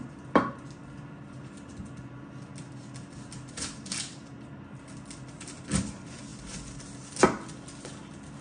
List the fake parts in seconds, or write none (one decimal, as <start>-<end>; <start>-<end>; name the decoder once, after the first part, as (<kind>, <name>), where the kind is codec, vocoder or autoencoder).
none